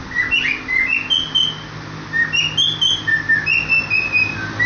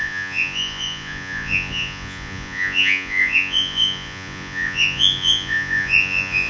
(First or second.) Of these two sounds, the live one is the first